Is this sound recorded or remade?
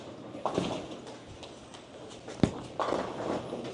recorded